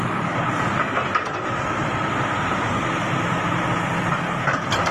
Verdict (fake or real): real